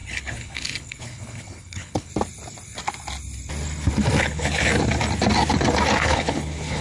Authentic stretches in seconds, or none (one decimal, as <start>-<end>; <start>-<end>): 2.1-4.2; 4.7-6.0